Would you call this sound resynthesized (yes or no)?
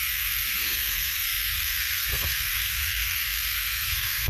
yes